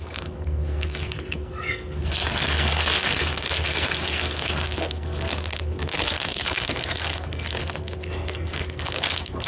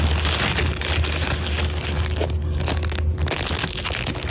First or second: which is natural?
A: second